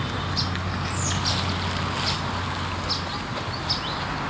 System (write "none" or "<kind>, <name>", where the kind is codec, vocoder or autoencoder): none